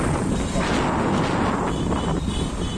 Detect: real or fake real